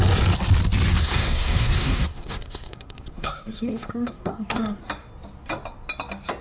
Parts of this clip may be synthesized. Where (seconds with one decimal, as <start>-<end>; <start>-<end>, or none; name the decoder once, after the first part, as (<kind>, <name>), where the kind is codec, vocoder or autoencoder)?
1.0-4.8 (codec, SNAC)